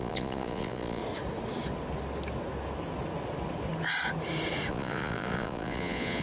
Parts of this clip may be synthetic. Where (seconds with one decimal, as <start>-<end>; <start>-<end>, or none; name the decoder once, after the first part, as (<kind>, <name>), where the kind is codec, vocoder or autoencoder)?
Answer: 0.0-1.0 (vocoder, Vocos); 4.7-6.2